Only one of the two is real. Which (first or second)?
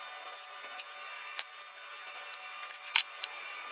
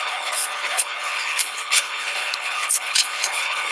first